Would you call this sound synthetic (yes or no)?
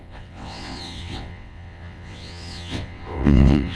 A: yes